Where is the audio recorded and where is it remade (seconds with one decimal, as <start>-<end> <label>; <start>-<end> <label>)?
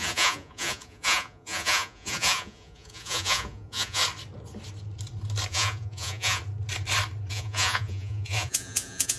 0.0-4.0 remade; 4.0-5.5 recorded; 5.5-6.4 remade; 6.4-7.3 recorded; 7.3-9.2 remade